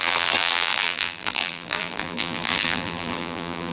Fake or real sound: fake